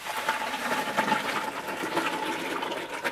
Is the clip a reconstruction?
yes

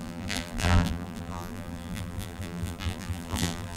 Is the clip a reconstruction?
yes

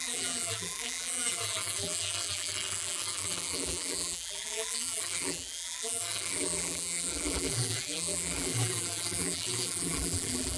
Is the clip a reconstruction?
yes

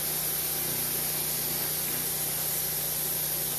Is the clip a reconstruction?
no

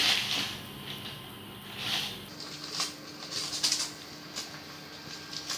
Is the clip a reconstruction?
no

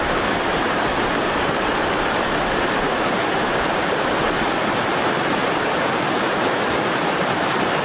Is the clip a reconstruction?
yes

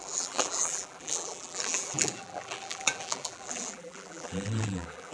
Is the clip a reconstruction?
yes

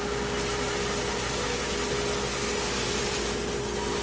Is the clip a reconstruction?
no